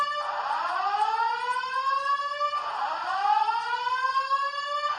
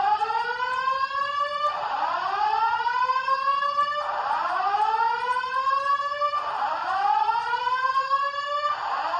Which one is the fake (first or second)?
second